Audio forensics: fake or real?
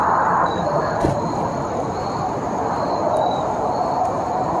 real